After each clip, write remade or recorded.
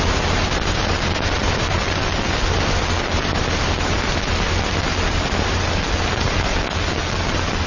recorded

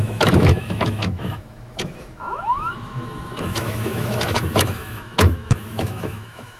remade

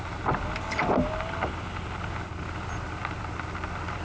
recorded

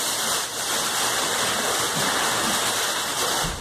remade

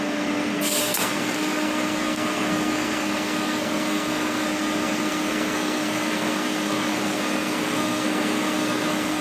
remade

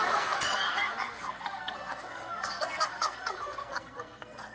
remade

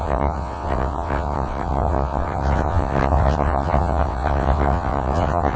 remade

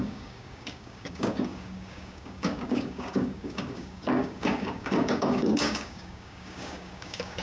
remade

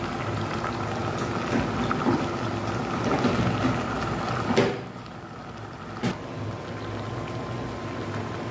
recorded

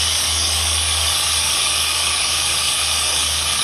remade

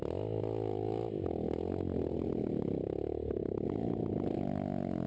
recorded